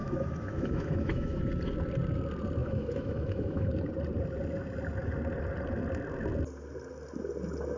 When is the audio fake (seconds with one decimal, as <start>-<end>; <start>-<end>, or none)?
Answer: 0.0-1.4; 2.6-3.7